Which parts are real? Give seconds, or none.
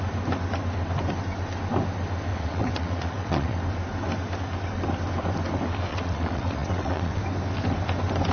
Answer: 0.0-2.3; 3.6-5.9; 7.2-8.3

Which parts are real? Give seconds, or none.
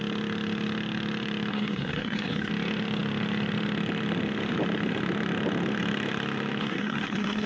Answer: 0.0-1.5; 2.5-6.6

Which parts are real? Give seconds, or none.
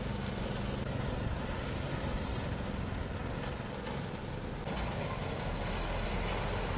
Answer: 0.0-6.8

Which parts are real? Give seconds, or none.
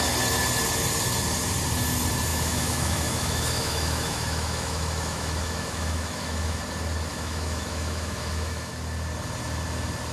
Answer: 0.0-2.3; 6.6-7.1; 8.7-10.1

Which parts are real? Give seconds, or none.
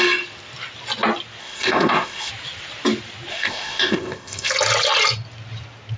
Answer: 0.0-1.4; 2.3-3.3; 4.5-6.0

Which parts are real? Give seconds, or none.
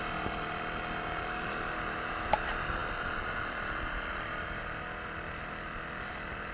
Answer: 0.0-6.5